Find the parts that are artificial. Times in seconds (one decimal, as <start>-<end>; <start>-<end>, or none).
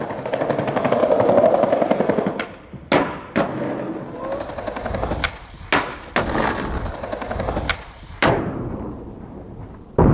none